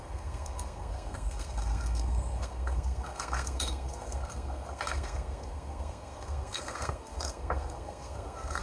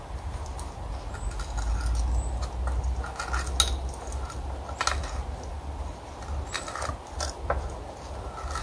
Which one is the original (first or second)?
second